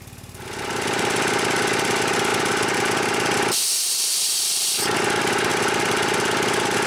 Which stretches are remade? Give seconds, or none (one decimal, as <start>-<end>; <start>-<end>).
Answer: none